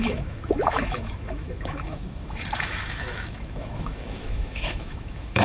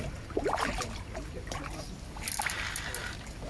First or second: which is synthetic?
first